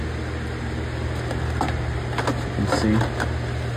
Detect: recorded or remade recorded